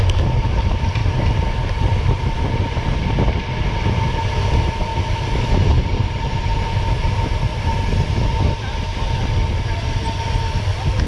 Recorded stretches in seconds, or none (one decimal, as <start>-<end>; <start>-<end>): 0.0-4.9; 7.4-11.1